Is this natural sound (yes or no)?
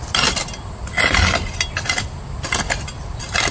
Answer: yes